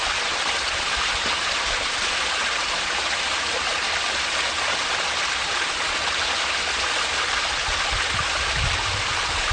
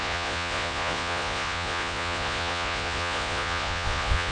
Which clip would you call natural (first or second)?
first